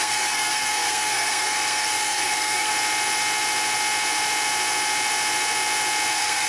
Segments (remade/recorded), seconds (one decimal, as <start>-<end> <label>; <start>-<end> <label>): 0.0-2.7 remade; 2.7-6.1 recorded; 6.1-6.5 remade